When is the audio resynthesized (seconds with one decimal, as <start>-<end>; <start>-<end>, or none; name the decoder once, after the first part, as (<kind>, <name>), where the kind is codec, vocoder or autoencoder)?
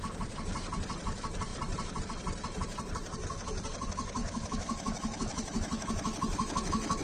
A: 4.2-7.0 (autoencoder, DAC-VAE)